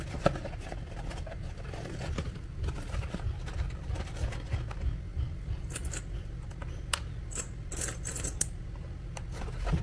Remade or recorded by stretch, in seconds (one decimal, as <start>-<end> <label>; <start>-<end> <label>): 0.0-0.4 recorded; 0.4-3.3 remade; 3.3-5.1 recorded; 5.1-6.0 remade; 6.0-9.8 recorded